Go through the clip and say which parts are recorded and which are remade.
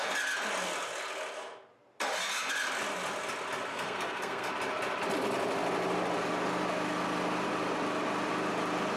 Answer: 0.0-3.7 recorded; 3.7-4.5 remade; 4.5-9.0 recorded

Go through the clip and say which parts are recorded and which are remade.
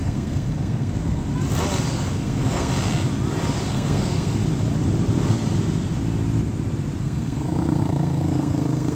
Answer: 0.0-1.3 remade; 1.3-1.9 recorded; 1.9-2.7 remade; 2.7-3.7 recorded; 3.7-4.4 remade; 4.4-7.0 recorded; 7.0-8.9 remade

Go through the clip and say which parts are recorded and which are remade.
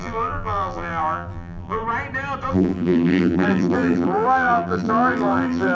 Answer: 0.0-1.8 remade; 1.8-2.5 recorded; 2.5-5.7 remade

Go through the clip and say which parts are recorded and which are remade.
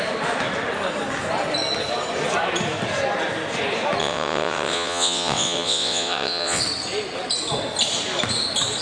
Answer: 0.0-4.0 recorded; 4.0-6.6 remade; 6.6-8.8 recorded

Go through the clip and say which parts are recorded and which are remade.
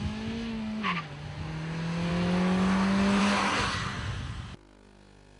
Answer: 0.0-5.4 recorded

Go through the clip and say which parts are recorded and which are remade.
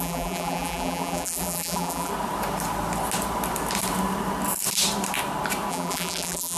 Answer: 0.0-2.1 remade; 2.1-5.7 recorded; 5.7-6.6 remade